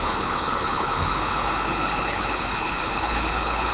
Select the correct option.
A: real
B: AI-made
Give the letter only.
B